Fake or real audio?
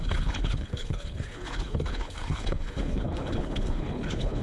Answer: fake